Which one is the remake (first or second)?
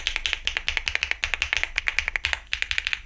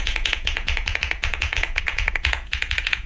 second